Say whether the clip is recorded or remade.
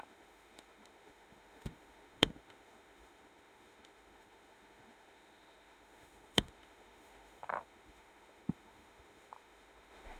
remade